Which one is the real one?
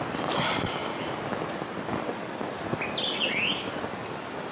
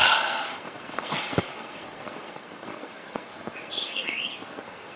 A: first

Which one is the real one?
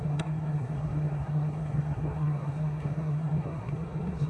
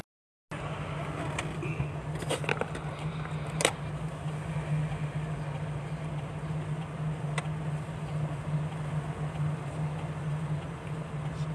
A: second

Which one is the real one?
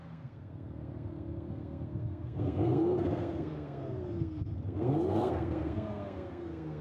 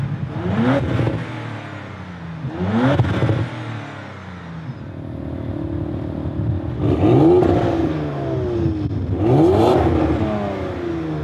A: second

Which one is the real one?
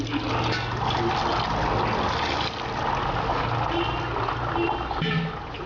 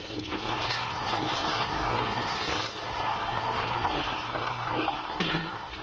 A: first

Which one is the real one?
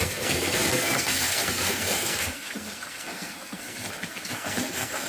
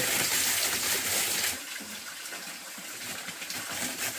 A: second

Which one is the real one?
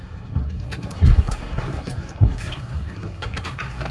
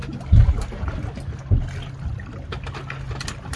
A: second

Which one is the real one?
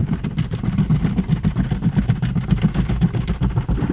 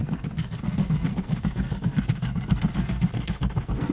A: first